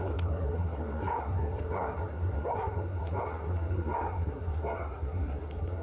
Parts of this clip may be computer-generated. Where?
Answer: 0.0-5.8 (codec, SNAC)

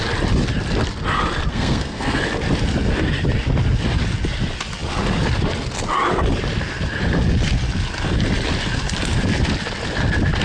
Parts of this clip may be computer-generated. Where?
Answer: 1.5-2.2 (codec, SNAC)

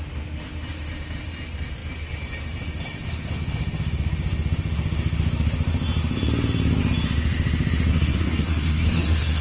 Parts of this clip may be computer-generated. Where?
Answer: 7.9-9.4 (codec, SNAC)

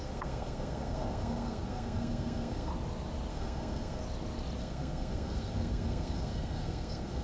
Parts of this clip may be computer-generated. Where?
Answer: 0.0-2.7 (codec, SNAC); 3.3-4.0; 4.6-7.2

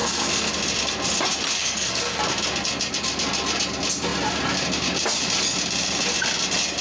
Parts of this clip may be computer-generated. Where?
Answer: 0.0-0.5 (codec, SNAC); 1.6-2.2

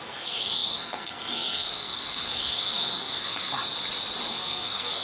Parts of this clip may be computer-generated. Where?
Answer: 0.0-3.5 (codec, SNAC); 4.3-5.0

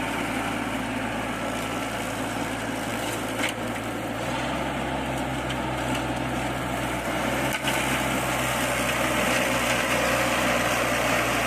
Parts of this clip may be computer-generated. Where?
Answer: none